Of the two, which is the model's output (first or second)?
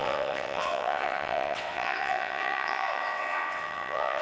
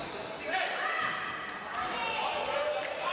first